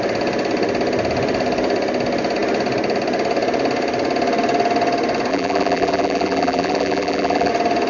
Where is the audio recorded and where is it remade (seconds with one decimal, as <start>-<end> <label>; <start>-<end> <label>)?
0.0-5.3 recorded; 5.3-7.5 remade; 7.5-7.9 recorded